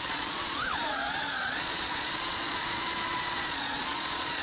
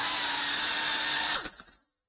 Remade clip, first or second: first